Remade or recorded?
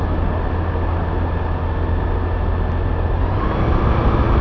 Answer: recorded